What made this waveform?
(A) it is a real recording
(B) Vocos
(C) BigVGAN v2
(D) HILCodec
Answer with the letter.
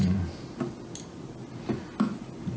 A